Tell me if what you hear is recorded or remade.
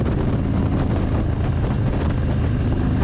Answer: recorded